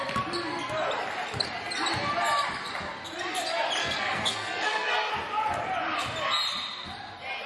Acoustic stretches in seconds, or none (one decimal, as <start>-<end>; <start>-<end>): 0.0-3.8; 5.1-7.5